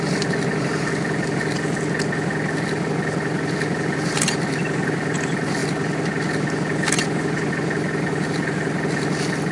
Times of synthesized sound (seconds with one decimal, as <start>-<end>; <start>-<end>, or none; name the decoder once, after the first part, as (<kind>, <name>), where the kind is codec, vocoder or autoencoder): none